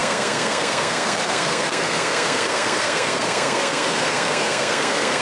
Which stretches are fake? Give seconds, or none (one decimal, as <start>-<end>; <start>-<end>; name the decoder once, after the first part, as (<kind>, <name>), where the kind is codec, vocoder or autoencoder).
0.0-5.2 (codec, SNAC)